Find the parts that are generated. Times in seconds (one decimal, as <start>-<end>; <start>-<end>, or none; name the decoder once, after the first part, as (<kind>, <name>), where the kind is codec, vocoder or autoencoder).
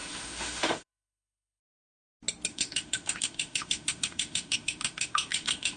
0.0-1.6 (autoencoder, DAC-VAE); 2.5-5.8